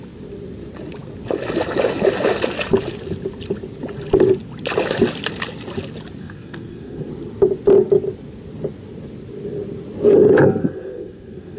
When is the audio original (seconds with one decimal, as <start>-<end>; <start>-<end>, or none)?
0.0-6.2; 7.1-10.6